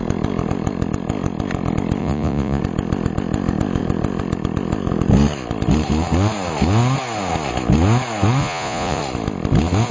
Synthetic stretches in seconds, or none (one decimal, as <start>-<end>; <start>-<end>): 2.0-2.6; 8.4-9.0